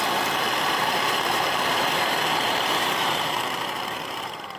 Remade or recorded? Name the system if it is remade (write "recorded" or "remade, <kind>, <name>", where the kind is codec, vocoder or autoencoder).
remade, vocoder, BigVGAN v2